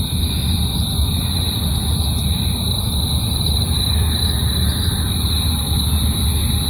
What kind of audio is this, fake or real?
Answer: real